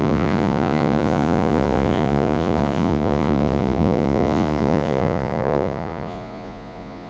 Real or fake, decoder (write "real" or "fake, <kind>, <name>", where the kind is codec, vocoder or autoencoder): fake, vocoder, Vocos